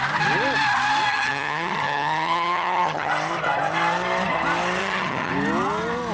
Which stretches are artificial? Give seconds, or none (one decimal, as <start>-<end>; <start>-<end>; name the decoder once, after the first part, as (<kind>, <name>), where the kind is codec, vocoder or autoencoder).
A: 1.1-3.1 (vocoder, HiFi-GAN); 4.8-5.3